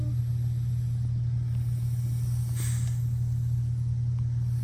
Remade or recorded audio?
recorded